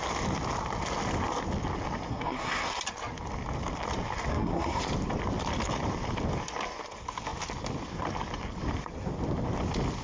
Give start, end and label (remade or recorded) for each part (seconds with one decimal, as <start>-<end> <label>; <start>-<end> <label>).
0.0-2.1 recorded; 2.1-2.8 remade; 2.8-4.3 recorded; 4.3-4.8 remade; 4.8-10.0 recorded